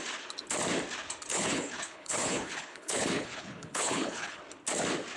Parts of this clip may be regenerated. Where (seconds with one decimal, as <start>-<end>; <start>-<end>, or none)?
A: 1.3-4.4